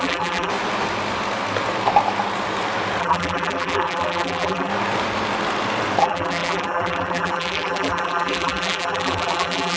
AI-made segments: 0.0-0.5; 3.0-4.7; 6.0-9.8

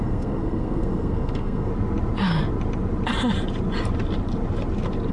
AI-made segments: 0.0-1.7

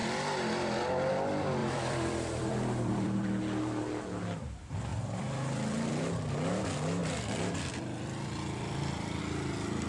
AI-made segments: 1.6-3.4; 4.9-5.9; 7.0-9.2

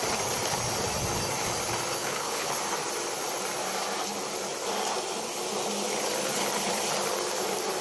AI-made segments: 2.0-2.6

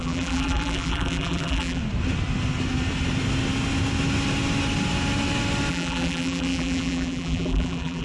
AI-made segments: 0.0-1.8; 5.7-8.0